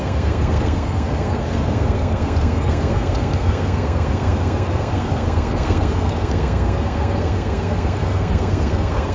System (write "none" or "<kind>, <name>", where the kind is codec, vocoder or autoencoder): codec, SNAC